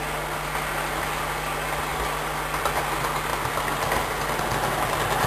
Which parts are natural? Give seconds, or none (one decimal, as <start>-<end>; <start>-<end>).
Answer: 0.0-5.3